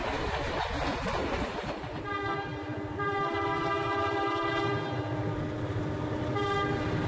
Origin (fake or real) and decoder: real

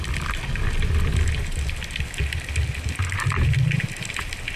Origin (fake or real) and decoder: real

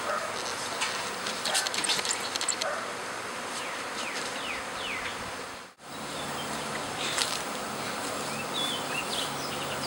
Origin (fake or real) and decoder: real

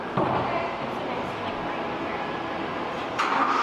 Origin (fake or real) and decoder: real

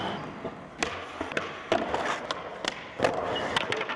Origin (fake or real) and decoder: real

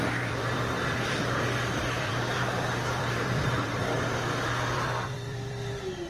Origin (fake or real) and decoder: fake, vocoder, BigVGAN v2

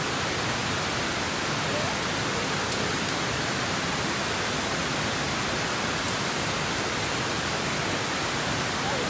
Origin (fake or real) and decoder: real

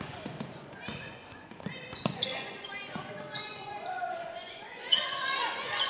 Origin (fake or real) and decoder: fake, vocoder, Vocos